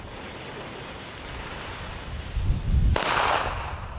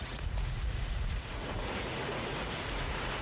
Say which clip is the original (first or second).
first